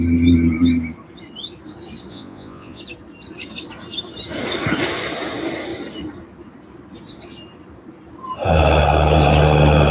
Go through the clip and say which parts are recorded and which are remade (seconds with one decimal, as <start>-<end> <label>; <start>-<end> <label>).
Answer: 0.0-2.1 recorded; 2.1-2.8 remade; 2.8-9.9 recorded